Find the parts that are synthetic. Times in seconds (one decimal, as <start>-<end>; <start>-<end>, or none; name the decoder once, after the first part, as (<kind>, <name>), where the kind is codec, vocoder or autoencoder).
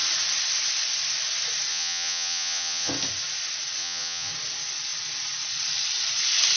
1.7-2.9 (vocoder, Vocos); 3.8-4.3